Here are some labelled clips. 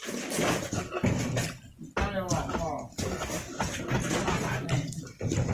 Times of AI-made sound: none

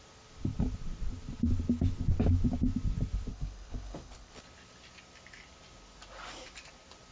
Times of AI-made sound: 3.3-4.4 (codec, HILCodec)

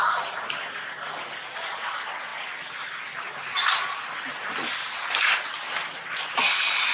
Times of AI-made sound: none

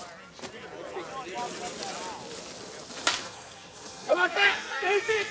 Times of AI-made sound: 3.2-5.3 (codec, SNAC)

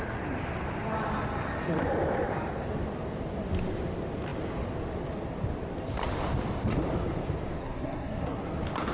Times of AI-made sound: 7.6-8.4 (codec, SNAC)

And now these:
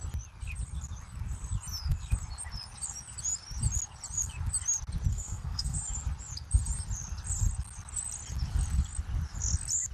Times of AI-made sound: 5.1-5.8 (codec, SNAC)

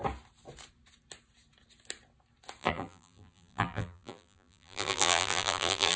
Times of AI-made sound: 2.6-6.0 (vocoder, BigVGAN v2)

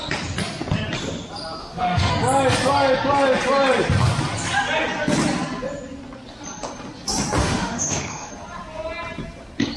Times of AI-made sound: 1.6-2.1 (autoencoder, DAC-VAE); 7.4-8.3